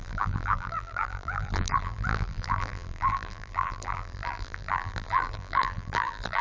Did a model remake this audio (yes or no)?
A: yes